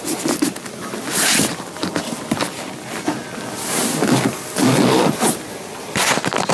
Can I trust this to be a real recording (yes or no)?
yes